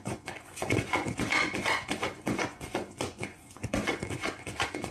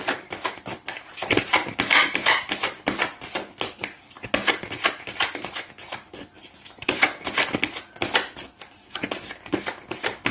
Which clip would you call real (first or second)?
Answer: second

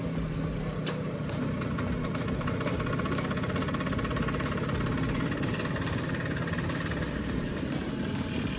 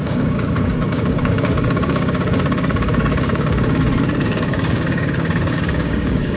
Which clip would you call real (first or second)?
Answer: first